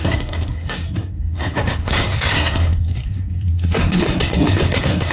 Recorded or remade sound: remade